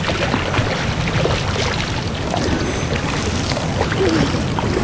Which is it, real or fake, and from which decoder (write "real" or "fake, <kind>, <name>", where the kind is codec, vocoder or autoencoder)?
real